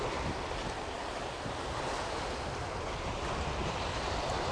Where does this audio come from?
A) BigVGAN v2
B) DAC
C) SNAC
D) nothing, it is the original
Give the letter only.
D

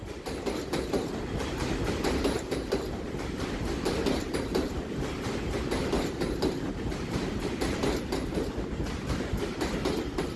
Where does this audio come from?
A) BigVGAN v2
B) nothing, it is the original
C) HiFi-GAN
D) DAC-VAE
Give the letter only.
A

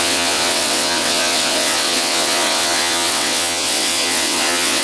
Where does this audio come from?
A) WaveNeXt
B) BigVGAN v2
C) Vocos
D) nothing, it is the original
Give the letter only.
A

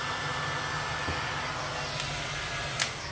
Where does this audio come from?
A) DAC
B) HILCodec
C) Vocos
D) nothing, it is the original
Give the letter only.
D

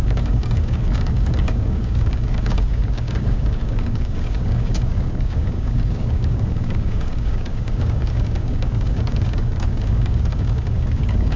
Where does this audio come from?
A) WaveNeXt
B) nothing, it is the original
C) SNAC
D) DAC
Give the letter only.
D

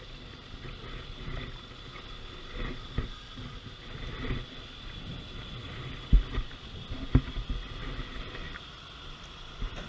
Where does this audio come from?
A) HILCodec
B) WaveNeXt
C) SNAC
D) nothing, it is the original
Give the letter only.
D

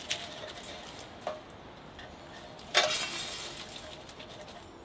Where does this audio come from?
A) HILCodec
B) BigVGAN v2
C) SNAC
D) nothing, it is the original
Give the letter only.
D